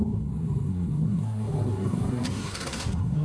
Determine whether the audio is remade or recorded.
remade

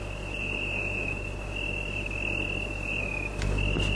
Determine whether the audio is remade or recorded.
recorded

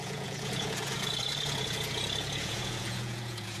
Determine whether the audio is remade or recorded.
remade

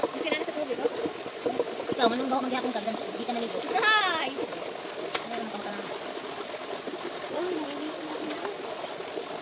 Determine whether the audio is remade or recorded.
recorded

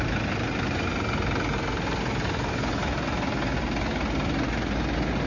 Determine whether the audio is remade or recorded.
recorded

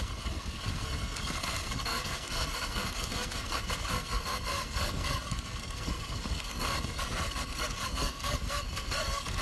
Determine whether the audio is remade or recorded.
remade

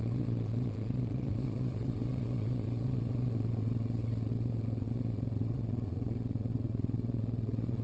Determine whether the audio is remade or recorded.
remade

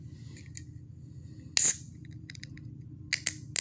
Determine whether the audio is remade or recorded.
recorded